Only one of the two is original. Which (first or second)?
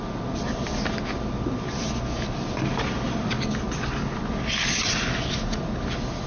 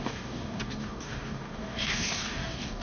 first